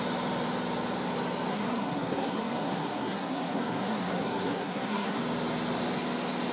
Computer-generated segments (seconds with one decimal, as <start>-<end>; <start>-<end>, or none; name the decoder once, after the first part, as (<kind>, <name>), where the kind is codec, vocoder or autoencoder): 1.5-5.2 (codec, SNAC)